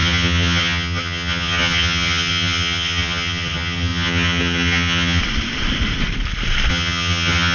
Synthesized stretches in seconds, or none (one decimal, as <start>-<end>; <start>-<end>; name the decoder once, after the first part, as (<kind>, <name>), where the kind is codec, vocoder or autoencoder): 0.0-5.2 (vocoder, HiFi-GAN); 6.7-7.5